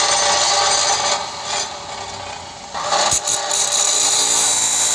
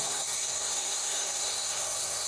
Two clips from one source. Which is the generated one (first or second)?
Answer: second